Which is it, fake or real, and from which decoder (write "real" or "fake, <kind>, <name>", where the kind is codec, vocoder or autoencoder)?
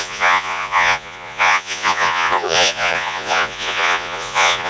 fake, vocoder, Vocos